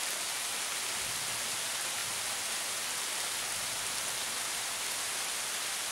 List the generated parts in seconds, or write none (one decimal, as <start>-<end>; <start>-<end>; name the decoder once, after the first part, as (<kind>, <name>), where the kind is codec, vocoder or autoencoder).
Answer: 0.0-0.5 (vocoder, BigVGAN v2); 1.5-2.0; 4.2-5.9